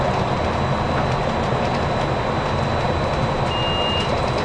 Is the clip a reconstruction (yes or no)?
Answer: no